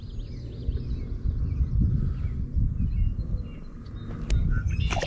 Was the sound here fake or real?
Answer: real